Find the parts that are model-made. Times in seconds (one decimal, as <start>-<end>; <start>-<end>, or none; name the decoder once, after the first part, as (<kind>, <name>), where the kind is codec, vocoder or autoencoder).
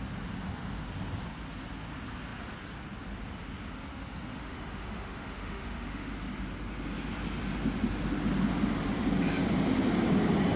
4.3-6.1 (autoencoder, DAC-VAE)